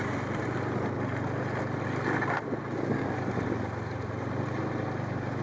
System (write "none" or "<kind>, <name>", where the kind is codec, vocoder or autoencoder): none